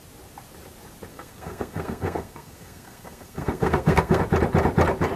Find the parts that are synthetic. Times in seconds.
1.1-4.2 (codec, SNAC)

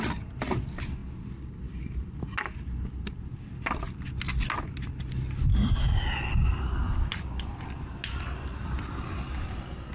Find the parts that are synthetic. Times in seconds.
none